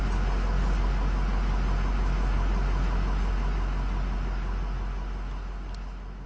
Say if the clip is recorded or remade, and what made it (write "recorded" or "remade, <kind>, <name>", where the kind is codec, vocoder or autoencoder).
recorded